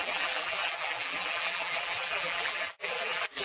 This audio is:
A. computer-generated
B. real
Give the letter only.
A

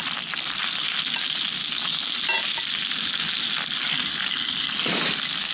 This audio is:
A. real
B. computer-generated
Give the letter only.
A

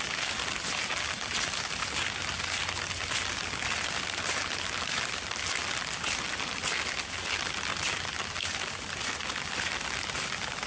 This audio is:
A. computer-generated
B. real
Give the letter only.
B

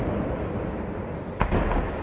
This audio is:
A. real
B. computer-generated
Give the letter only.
A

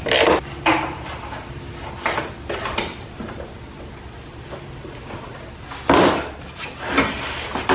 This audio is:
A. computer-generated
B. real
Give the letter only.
B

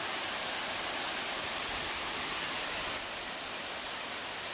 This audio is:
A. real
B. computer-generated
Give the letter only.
A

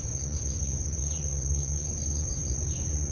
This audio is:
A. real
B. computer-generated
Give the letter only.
B